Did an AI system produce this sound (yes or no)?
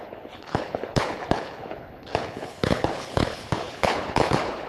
yes